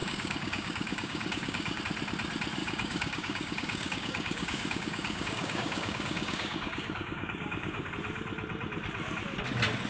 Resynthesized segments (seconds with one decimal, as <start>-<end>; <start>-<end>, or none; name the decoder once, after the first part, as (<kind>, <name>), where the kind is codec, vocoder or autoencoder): 0.0-1.8 (codec, DAC); 2.6-7.9

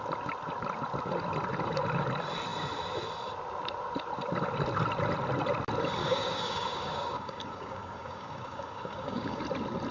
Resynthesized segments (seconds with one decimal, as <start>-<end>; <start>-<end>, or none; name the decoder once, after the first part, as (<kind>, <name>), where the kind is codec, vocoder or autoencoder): 6.0-9.4 (codec, DAC)

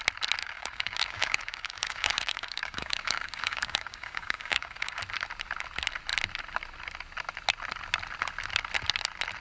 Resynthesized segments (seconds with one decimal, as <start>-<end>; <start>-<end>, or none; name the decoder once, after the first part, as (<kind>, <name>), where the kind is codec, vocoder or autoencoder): 0.4-5.0 (codec, DAC)

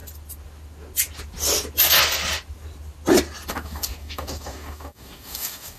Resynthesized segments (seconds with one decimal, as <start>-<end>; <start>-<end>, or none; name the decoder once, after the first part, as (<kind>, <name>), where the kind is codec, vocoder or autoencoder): 3.5-5.8 (codec, DAC)